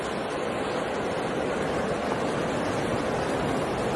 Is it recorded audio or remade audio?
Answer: recorded